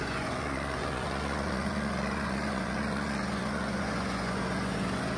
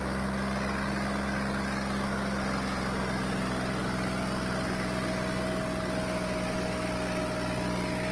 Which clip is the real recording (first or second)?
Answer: second